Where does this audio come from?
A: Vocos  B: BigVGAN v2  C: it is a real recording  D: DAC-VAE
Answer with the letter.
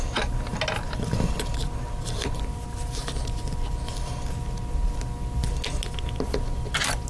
C